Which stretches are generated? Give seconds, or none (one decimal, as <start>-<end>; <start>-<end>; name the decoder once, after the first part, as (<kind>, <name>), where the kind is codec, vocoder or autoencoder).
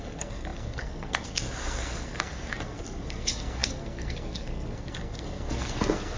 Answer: 0.0-6.2 (codec, SNAC)